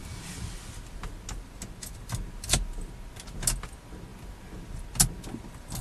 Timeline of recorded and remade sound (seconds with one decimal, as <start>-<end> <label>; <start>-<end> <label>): 0.0-5.8 recorded